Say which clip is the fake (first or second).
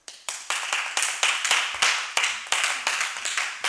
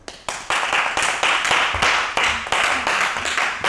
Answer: first